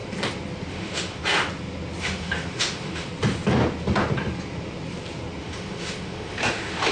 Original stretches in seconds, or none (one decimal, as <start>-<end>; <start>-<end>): 0.0-0.7; 1.2-2.0; 3.1-5.4